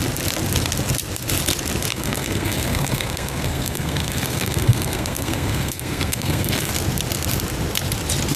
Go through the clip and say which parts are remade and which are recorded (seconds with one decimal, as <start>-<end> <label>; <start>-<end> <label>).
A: 0.0-1.9 recorded; 1.9-6.7 remade; 6.7-8.4 recorded